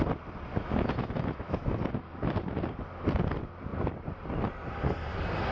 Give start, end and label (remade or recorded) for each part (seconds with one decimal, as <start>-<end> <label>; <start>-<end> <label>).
0.0-0.5 recorded; 0.5-2.4 remade; 2.4-5.5 recorded